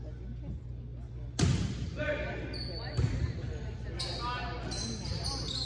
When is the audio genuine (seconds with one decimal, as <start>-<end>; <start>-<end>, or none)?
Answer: 0.0-5.6